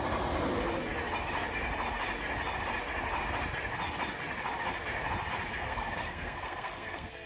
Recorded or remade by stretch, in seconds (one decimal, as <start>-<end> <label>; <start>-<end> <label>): 0.0-5.5 recorded; 5.5-7.3 remade